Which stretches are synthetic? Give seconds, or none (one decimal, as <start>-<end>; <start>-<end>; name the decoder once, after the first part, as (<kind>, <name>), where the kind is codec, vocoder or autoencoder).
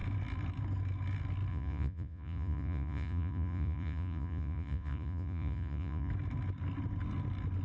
1.5-6.1 (vocoder, Vocos)